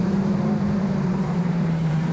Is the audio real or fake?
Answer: fake